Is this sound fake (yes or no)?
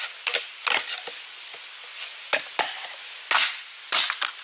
no